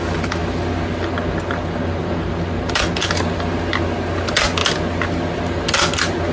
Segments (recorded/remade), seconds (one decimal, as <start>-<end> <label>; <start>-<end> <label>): 0.0-6.3 recorded